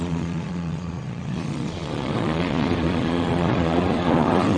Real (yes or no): no